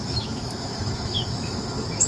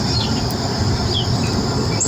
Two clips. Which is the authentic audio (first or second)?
second